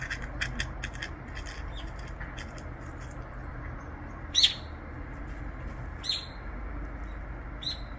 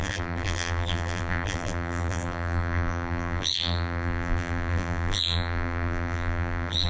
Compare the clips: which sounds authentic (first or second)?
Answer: first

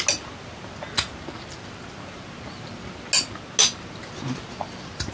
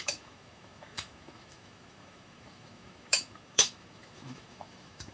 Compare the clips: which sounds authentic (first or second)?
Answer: first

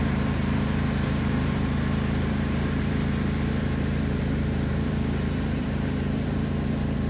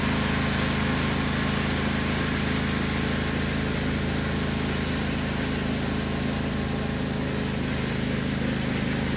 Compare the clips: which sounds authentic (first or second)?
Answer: second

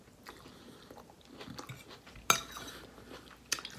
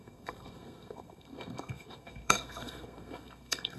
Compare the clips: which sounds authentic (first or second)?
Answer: first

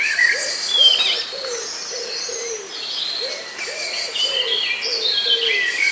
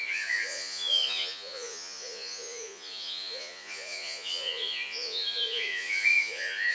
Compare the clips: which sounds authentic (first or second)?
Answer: first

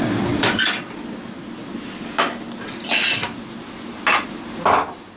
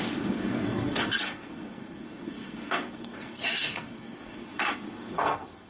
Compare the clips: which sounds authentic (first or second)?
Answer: first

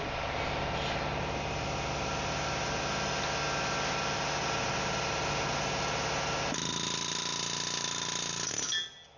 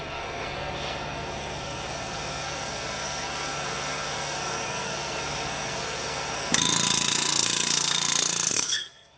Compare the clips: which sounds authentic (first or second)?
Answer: first